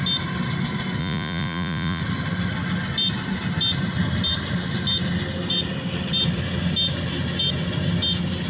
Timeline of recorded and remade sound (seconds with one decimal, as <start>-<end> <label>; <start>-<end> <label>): 0.0-1.0 recorded; 1.0-2.0 remade; 2.0-8.5 recorded